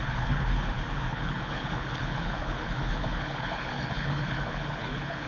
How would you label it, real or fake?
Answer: fake